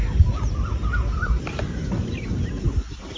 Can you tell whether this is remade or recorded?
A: recorded